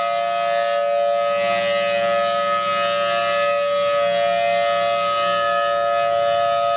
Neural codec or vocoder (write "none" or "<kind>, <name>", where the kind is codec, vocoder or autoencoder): none